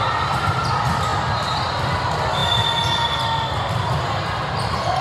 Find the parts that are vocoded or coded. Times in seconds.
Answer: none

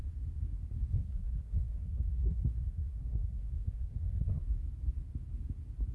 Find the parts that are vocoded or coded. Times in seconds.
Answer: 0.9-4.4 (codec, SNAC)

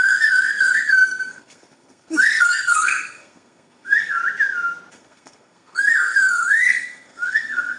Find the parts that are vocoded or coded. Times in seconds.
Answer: 0.0-4.2 (codec, SNAC); 4.9-7.8

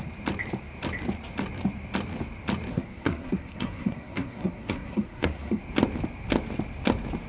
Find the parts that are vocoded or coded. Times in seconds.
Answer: 2.7-5.6 (codec, SNAC)

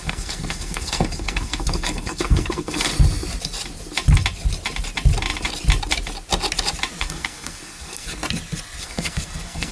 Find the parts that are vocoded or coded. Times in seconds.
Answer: 0.0-2.9 (codec, SNAC); 7.0-8.2; 8.8-9.7

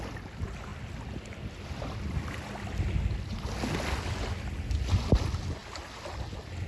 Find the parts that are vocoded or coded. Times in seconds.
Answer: none

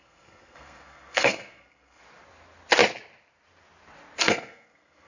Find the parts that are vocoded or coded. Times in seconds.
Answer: 0.0-2.0 (codec, SNAC); 4.2-5.1